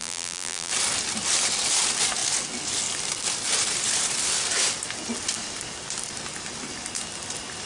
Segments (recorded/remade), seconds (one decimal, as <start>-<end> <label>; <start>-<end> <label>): 0.0-0.7 remade; 0.7-7.7 recorded